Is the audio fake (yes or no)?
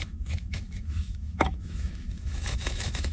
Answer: yes